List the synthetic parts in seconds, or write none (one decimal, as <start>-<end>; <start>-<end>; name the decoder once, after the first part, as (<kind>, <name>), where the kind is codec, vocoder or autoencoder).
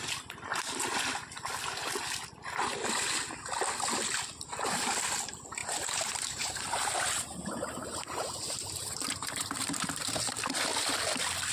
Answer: 5.6-10.1 (vocoder, BigVGAN v2)